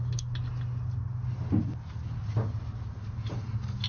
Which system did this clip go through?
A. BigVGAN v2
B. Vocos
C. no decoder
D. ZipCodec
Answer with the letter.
C